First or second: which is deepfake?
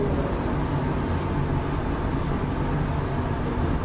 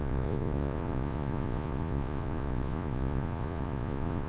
second